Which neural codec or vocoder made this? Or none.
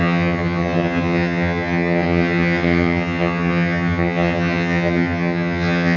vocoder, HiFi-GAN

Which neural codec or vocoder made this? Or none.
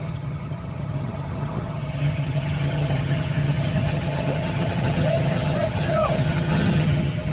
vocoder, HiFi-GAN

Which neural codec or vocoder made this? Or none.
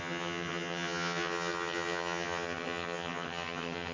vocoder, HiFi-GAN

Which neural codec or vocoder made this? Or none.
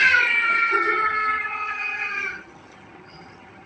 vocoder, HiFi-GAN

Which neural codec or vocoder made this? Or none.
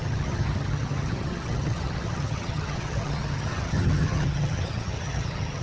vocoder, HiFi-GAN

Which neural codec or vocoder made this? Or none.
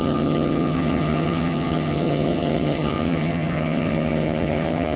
vocoder, HiFi-GAN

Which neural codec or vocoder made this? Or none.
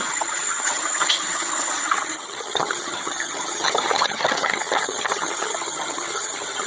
vocoder, HiFi-GAN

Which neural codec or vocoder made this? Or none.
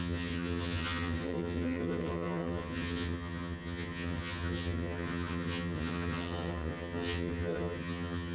vocoder, HiFi-GAN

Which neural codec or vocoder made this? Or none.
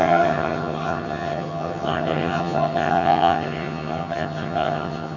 vocoder, HiFi-GAN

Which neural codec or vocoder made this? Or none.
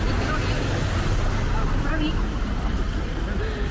none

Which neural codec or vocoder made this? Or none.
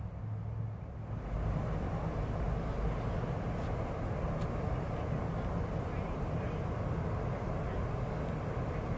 none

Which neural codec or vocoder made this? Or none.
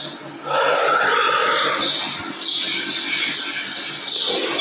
none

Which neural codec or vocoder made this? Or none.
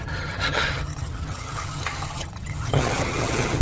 vocoder, HiFi-GAN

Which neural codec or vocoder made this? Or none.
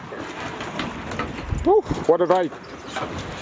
none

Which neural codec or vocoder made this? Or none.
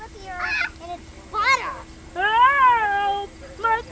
none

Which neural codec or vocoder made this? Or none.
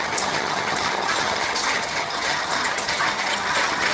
vocoder, HiFi-GAN